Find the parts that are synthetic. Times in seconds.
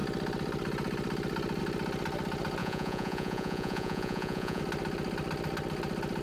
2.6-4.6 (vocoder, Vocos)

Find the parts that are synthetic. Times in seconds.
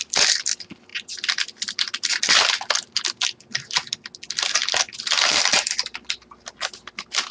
none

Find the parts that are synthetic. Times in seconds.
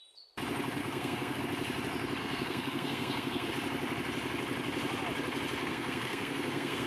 0.8-1.4 (codec, SNAC); 2.2-3.5; 5.6-6.9